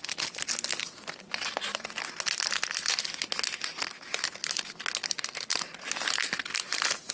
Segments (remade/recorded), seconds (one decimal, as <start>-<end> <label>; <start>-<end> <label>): 0.0-7.1 recorded